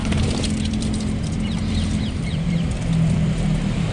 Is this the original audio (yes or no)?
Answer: no